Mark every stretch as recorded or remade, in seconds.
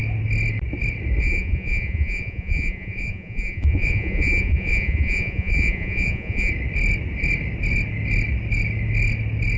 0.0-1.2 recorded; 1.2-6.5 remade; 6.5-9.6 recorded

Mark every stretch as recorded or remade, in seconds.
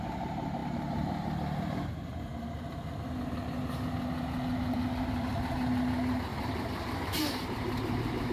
0.0-6.3 recorded; 6.3-8.3 remade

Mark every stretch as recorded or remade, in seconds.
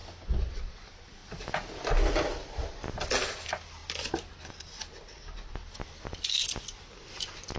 0.0-7.6 recorded